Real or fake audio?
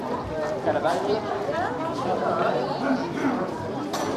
real